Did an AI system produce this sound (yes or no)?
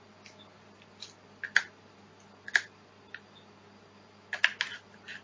no